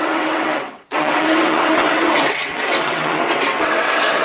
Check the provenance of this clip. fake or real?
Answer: fake